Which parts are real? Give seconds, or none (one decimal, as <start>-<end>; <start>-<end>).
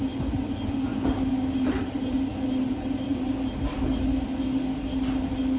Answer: 0.0-0.9; 3.8-5.6